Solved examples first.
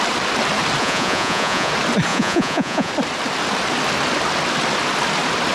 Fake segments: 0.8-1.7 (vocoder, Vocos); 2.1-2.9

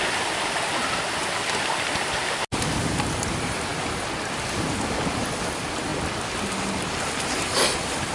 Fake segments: none

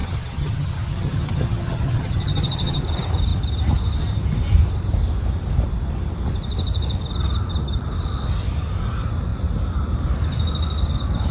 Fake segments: 0.0-2.8 (vocoder, HiFi-GAN)

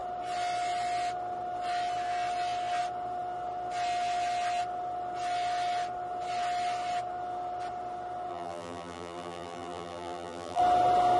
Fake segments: 8.3-10.6 (vocoder, BigVGAN v2)